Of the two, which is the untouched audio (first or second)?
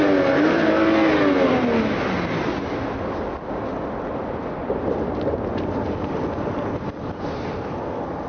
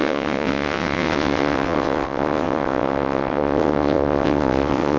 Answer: first